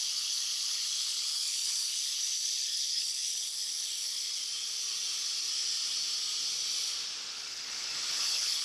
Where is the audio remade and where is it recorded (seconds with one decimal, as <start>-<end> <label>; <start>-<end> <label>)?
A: 0.0-4.4 remade; 4.4-7.3 recorded; 7.3-8.6 remade